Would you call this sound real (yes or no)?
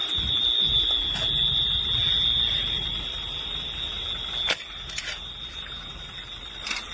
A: yes